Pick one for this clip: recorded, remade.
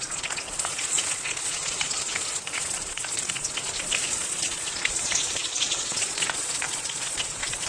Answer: remade